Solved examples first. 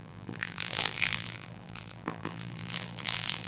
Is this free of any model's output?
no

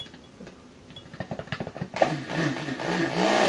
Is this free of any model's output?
yes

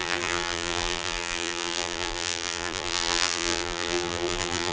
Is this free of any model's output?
no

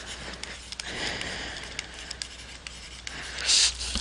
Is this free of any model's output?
yes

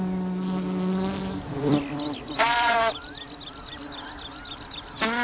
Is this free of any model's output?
no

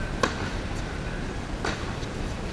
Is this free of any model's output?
yes